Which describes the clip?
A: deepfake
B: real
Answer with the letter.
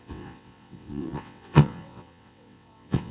A